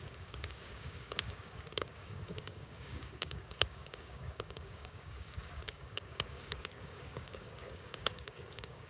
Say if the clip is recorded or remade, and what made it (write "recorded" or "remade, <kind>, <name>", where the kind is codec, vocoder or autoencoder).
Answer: remade, codec, DAC